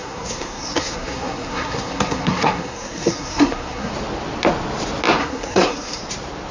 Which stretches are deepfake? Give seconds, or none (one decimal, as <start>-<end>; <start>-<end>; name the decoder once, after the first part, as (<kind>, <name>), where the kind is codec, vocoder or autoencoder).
0.0-3.9 (codec, SNAC); 5.2-6.0